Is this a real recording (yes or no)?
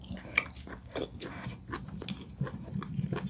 yes